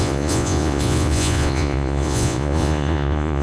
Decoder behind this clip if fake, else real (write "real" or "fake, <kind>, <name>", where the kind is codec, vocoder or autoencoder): fake, vocoder, Vocos